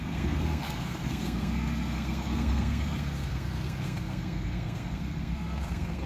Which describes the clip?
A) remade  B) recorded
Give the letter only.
A